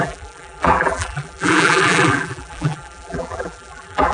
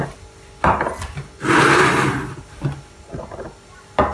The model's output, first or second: first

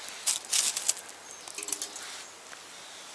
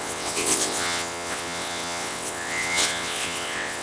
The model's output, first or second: second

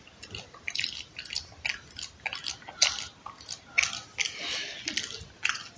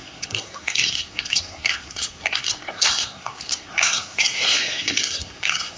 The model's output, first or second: second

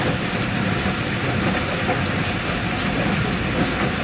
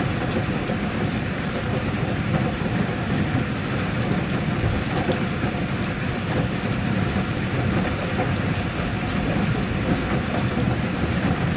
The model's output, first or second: second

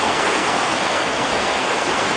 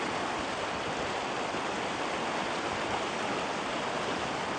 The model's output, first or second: first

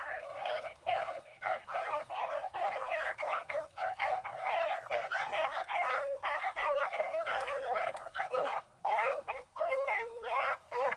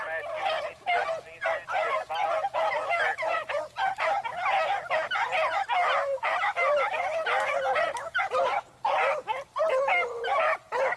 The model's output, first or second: first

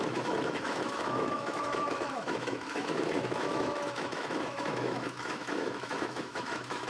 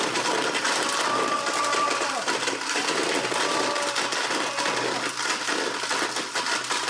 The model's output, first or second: first